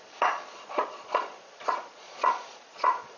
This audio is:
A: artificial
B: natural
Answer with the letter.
A